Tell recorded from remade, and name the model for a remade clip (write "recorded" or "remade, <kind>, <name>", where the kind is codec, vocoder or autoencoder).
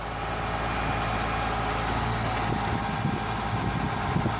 recorded